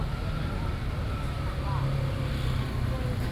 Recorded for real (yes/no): yes